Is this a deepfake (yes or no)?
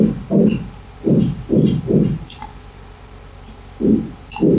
no